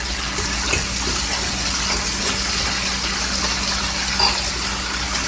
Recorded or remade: recorded